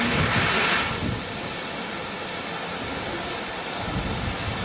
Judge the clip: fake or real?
real